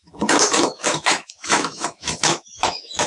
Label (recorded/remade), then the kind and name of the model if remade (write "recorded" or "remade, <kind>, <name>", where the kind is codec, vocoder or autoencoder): remade, autoencoder, DAC-VAE